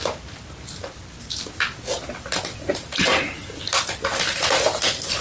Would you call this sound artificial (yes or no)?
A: no